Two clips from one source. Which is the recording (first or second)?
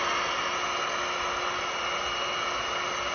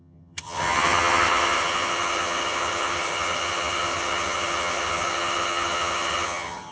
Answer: first